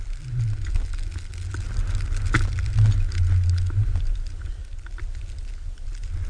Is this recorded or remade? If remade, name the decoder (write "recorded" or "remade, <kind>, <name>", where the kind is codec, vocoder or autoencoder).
recorded